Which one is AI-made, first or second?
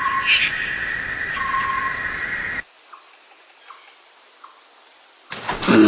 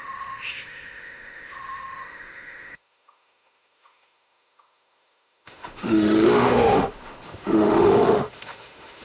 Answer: second